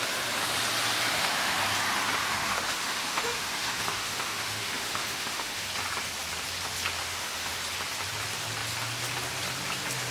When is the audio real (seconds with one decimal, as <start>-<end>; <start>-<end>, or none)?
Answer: 0.0-1.1; 1.6-2.2; 5.7-7.0; 7.6-10.1